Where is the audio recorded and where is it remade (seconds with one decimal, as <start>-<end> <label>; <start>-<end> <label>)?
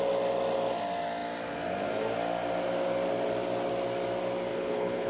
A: 0.0-4.5 recorded; 4.5-5.1 remade